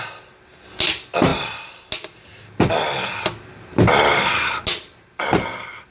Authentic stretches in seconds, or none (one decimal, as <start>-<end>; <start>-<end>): 0.0-5.9